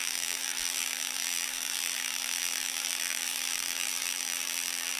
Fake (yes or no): yes